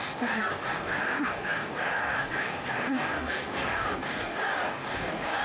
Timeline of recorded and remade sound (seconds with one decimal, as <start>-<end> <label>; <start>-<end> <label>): 0.0-5.4 remade